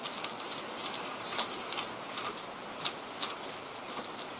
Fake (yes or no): no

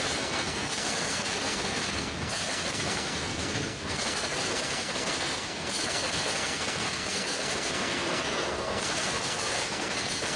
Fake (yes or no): yes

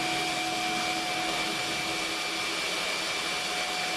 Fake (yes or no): no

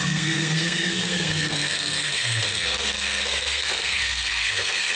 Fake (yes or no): yes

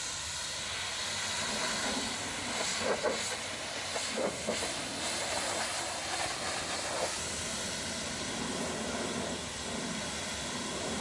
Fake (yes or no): no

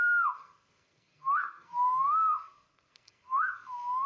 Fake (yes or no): yes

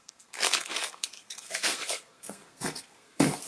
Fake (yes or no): yes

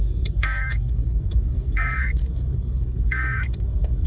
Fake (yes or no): yes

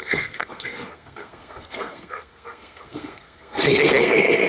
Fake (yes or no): yes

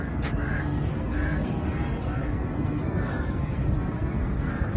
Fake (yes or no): yes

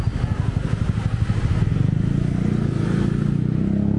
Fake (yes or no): no